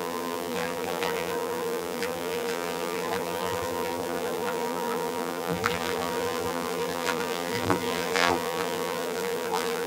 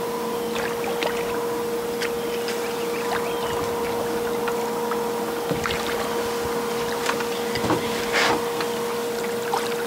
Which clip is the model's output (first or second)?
first